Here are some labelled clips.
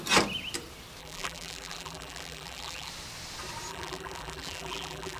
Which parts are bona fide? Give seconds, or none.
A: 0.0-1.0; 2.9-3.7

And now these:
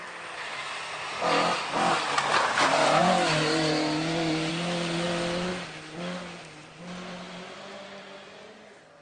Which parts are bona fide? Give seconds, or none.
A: 0.0-9.0

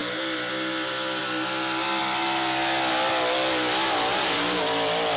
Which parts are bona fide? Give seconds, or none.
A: 0.0-4.1; 4.6-5.2

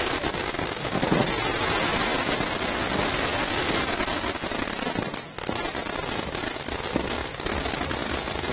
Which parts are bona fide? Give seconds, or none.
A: 0.0-8.5

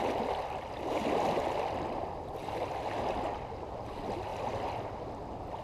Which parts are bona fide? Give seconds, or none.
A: 0.0-5.6

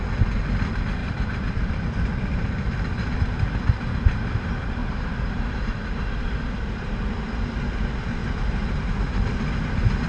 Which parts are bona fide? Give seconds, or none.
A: 0.0-1.0; 1.9-4.8; 7.1-10.1

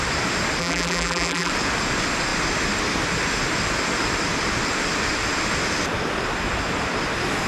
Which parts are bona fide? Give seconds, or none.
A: 0.0-0.6; 1.5-7.5